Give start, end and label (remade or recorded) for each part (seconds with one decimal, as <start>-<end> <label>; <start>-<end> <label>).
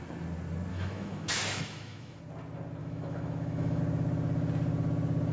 0.0-0.7 recorded; 0.7-2.2 remade; 2.2-2.8 recorded; 2.8-3.8 remade; 3.8-5.3 recorded